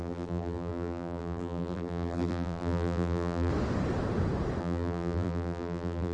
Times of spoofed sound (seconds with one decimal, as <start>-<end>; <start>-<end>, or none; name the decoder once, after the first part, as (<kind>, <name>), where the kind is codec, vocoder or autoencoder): 0.0-3.5 (vocoder, BigVGAN v2); 4.6-6.1